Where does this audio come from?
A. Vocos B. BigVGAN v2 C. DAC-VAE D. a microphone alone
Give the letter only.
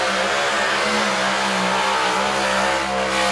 D